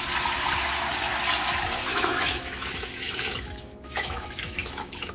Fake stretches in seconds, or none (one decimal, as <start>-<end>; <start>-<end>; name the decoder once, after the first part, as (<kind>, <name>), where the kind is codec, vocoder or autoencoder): 1.9-5.1 (autoencoder, DAC-VAE)